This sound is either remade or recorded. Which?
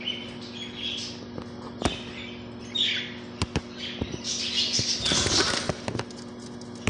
recorded